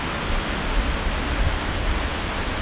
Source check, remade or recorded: recorded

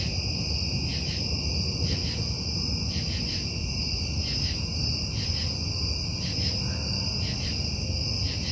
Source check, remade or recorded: recorded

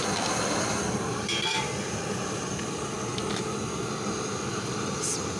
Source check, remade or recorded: recorded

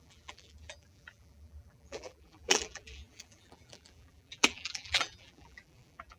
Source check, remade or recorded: remade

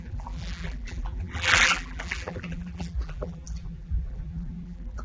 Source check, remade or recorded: remade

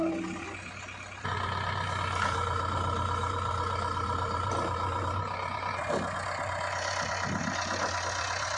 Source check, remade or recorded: recorded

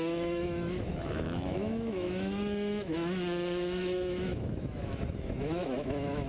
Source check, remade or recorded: remade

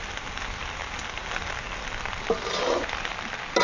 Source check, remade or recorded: recorded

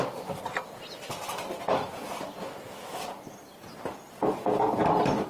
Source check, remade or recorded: recorded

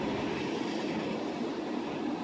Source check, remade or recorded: recorded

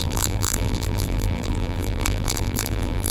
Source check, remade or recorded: remade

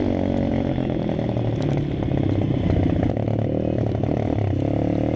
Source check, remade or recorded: recorded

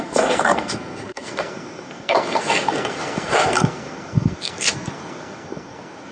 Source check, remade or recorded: remade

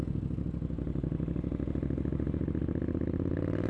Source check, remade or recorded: recorded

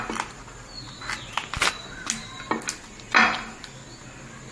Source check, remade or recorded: recorded